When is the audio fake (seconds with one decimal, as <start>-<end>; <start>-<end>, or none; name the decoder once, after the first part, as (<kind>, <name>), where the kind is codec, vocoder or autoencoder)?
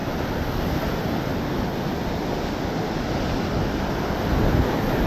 3.6-4.5 (vocoder, BigVGAN v2)